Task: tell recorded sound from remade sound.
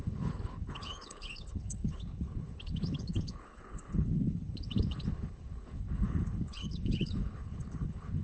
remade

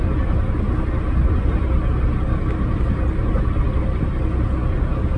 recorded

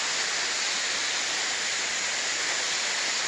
recorded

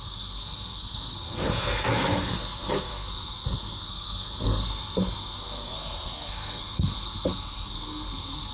remade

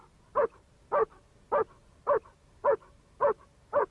recorded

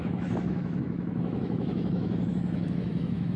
remade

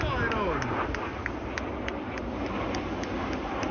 recorded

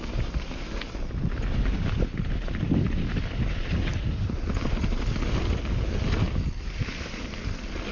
recorded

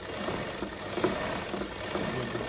recorded